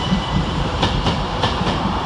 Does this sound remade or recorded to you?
remade